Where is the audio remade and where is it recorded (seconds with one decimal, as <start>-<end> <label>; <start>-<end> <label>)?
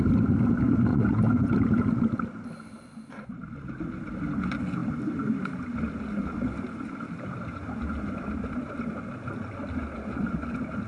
0.0-0.9 recorded; 0.9-1.5 remade; 1.5-10.9 recorded